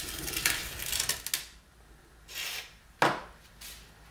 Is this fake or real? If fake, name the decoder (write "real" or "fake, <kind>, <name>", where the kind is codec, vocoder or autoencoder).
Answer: real